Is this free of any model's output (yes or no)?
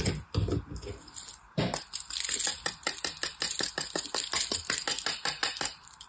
yes